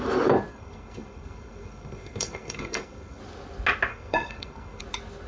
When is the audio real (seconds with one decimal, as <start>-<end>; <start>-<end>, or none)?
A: 0.0-0.5; 3.2-3.9; 4.8-5.3